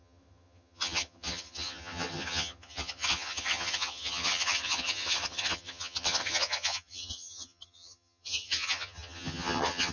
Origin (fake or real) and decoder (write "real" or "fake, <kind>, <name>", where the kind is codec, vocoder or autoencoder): fake, vocoder, HiFi-GAN